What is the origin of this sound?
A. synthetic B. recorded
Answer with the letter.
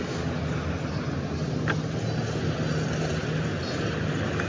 B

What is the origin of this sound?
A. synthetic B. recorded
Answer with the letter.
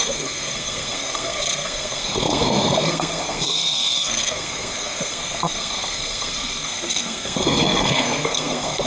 A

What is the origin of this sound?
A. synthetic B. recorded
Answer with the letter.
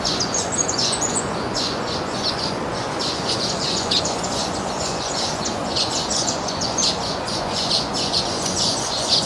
A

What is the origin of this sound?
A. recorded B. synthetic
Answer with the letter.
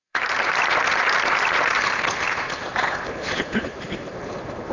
B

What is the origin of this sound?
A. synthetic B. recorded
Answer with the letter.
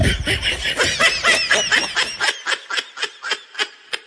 B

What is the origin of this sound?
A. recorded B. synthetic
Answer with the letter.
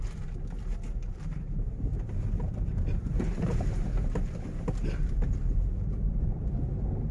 B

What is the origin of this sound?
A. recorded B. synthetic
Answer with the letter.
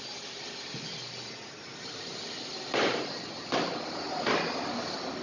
A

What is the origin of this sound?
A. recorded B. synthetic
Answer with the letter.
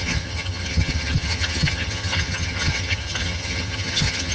B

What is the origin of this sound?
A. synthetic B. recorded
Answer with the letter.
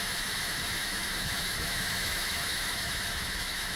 A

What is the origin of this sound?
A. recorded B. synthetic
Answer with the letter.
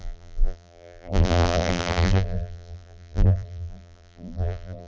B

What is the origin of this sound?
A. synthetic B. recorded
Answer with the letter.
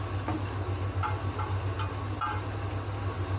B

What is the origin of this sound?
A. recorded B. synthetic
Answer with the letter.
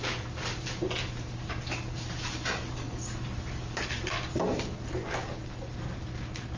A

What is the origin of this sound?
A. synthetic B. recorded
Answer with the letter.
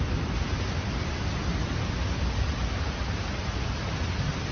B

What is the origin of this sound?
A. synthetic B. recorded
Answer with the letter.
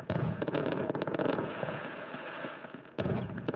A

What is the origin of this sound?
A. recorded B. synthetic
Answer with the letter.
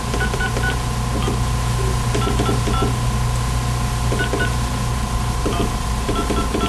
A